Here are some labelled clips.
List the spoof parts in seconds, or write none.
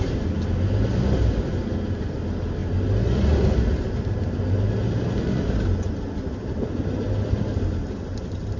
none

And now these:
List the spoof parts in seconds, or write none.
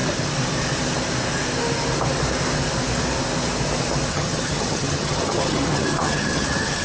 4.1-6.8 (vocoder, HiFi-GAN)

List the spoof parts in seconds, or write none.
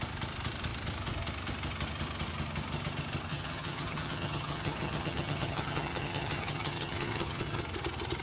3.3-7.6 (vocoder, HiFi-GAN)